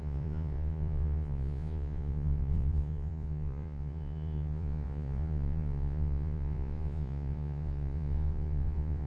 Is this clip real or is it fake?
fake